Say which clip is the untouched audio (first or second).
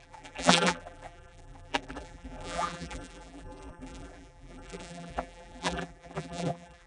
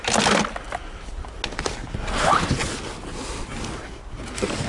second